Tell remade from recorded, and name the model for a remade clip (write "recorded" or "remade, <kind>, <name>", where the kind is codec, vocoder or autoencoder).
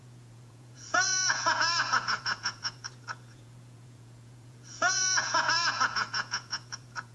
remade, vocoder, Vocos